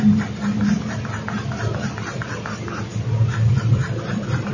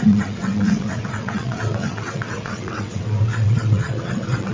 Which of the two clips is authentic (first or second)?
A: first